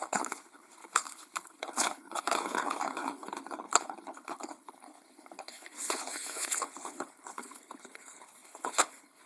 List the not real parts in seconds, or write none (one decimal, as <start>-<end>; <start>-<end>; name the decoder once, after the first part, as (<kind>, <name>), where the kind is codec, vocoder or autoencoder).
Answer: 0.0-9.3 (codec, HILCodec)